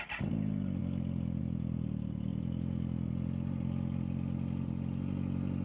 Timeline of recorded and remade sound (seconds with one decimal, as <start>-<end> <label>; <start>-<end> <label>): 0.0-5.6 recorded